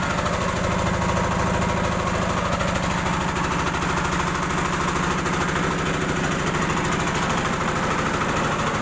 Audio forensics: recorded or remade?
recorded